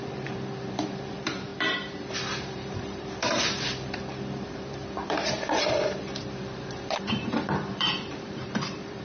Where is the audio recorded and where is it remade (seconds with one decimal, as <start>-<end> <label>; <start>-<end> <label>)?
0.0-9.0 remade